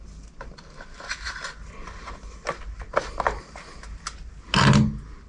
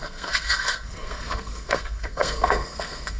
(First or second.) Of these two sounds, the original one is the first